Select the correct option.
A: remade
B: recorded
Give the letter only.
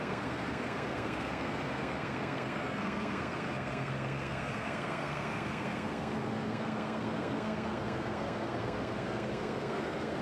A